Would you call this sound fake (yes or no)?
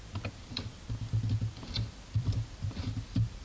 yes